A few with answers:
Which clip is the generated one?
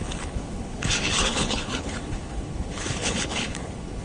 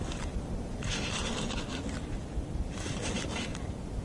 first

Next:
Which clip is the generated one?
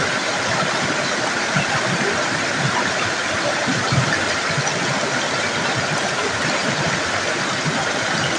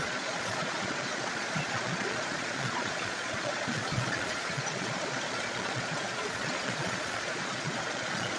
second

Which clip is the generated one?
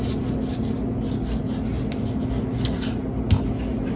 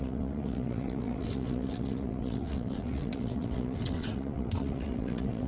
second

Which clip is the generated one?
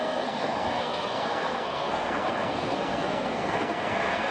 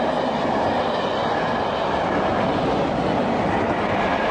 first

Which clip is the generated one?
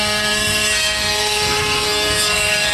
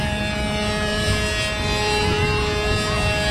first